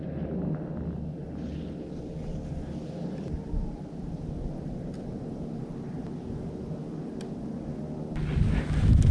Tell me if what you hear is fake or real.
real